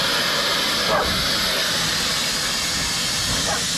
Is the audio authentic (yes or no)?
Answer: yes